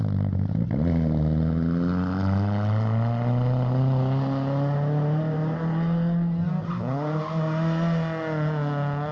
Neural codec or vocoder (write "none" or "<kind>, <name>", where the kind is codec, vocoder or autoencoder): none